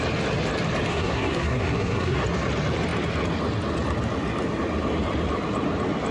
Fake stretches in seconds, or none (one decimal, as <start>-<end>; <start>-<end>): 0.9-2.2

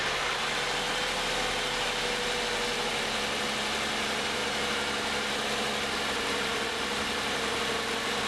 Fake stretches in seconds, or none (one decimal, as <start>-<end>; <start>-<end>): none

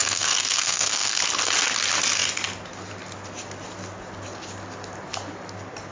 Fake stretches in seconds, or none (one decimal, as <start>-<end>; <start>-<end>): 0.0-1.2

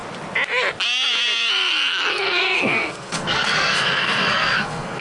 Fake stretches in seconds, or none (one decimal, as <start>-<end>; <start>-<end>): 2.1-5.0

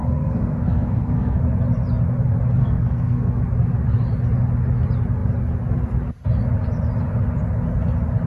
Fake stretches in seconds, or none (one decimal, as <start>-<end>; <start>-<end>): 0.0-1.4; 2.6-3.4